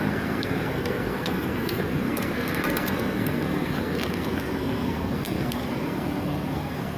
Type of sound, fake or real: fake